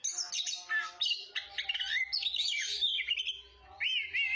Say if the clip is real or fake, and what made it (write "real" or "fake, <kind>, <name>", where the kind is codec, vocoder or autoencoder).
real